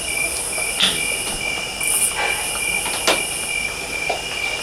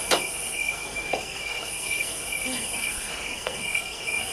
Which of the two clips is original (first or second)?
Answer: first